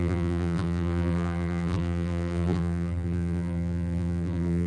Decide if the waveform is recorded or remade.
remade